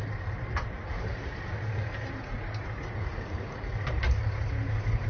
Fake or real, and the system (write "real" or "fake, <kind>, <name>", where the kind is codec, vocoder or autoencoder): real